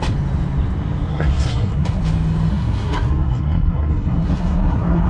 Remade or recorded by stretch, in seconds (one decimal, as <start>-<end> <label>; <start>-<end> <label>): 0.0-1.1 recorded; 1.1-2.0 remade; 2.0-2.5 recorded; 2.5-5.1 remade